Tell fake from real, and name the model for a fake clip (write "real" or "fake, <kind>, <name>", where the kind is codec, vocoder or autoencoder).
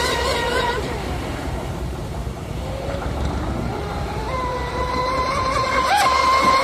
fake, vocoder, BigVGAN v2